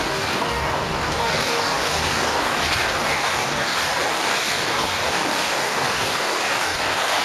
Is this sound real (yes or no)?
no